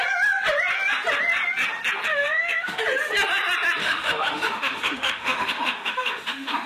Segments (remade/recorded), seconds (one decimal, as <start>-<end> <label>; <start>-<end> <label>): 0.0-2.1 recorded; 2.1-2.8 remade; 2.8-3.8 recorded; 3.8-6.7 remade